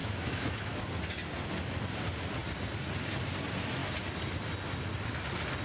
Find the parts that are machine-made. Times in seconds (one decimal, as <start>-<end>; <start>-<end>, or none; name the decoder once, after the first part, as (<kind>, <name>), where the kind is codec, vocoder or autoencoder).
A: 0.0-0.8 (autoencoder, DAC-VAE)